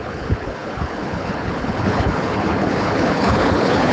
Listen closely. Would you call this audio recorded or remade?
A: remade